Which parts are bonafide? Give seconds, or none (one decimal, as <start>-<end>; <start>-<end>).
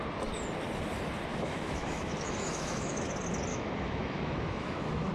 0.0-1.3; 3.1-3.5